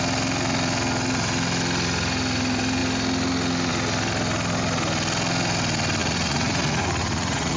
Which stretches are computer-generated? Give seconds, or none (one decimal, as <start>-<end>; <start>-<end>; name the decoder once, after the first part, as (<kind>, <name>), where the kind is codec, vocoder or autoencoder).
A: 6.0-7.6 (vocoder, Vocos)